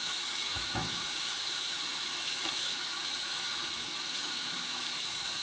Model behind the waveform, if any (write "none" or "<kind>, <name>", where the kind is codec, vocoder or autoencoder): autoencoder, DAC-VAE